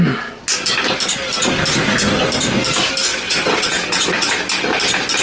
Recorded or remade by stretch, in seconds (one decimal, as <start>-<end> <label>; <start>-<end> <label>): 0.0-3.1 recorded; 3.1-4.3 remade; 4.3-5.2 recorded